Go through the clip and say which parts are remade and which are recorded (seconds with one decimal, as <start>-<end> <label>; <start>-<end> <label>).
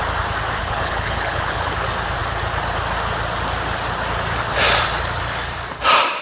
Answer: 0.0-0.6 recorded; 0.6-1.7 remade; 1.7-6.2 recorded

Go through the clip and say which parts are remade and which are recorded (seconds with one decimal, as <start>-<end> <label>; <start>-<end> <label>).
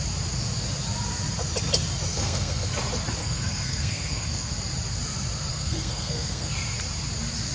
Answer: 0.0-2.1 recorded; 2.1-2.7 remade; 2.7-3.2 recorded; 3.2-4.5 remade; 4.5-5.5 recorded; 5.5-6.5 remade; 6.5-7.5 recorded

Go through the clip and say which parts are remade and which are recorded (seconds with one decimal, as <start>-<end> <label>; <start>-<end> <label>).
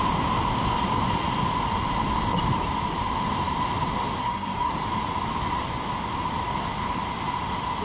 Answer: 0.0-4.2 recorded; 4.2-4.7 remade; 4.7-7.8 recorded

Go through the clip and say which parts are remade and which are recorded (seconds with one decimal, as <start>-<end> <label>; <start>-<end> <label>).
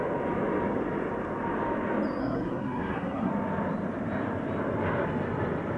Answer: 0.0-2.2 recorded; 2.2-3.3 remade; 3.3-5.8 recorded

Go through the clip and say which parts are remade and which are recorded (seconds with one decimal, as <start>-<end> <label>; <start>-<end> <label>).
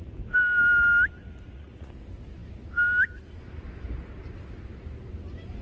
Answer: 0.0-1.2 recorded; 1.2-1.9 remade; 1.9-5.6 recorded